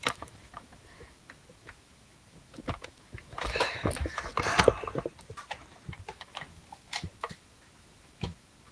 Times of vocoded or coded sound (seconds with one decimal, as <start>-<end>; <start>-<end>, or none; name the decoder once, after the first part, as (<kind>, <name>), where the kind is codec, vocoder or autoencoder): 0.0-4.3 (autoencoder, DAC-VAE); 5.9-8.7